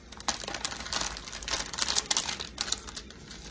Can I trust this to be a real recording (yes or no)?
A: yes